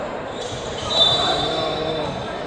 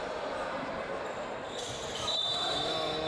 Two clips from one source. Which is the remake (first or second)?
first